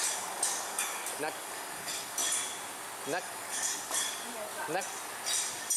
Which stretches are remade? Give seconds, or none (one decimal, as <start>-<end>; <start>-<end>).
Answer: 0.0-2.2; 3.2-4.5